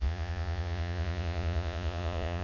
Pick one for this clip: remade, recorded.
remade